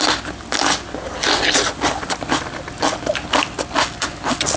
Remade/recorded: recorded